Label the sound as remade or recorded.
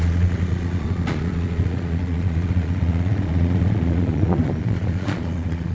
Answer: remade